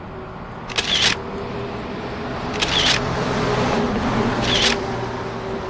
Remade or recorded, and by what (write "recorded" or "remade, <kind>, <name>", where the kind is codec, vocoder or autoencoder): recorded